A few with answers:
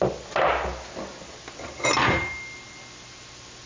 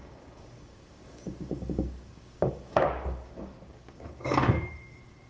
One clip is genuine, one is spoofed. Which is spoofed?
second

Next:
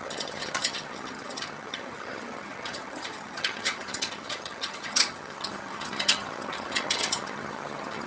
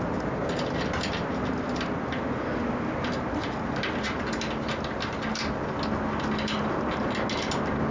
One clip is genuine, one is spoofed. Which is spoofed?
first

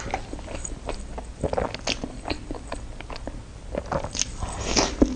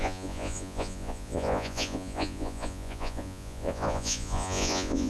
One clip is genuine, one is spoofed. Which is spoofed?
second